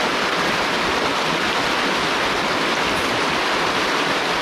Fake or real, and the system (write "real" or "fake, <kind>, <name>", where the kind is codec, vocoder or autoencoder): real